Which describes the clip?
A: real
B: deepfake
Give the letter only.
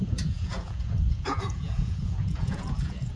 B